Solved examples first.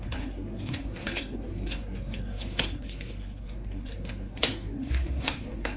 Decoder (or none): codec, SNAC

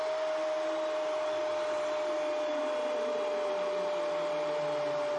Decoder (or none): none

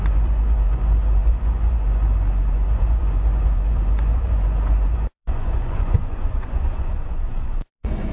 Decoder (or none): vocoder, Vocos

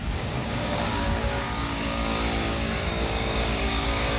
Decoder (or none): codec, DAC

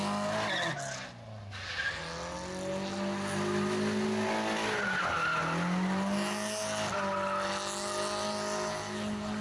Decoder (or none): none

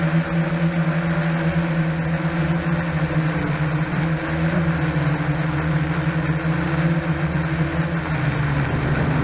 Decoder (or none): none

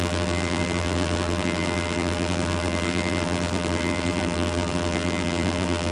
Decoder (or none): vocoder, BigVGAN v2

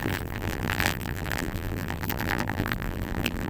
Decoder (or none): vocoder, BigVGAN v2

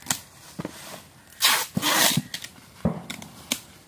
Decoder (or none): none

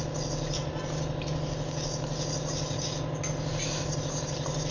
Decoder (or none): none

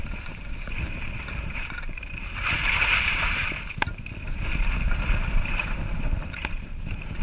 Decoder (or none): vocoder, BigVGAN v2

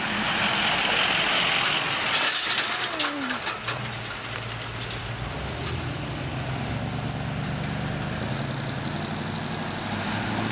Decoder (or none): none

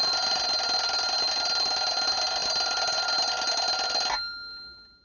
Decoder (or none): none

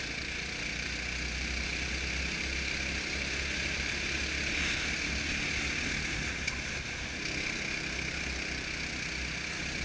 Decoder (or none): none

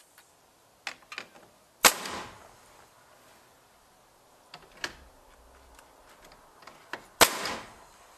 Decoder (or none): none